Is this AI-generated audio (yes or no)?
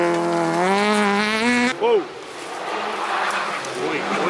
no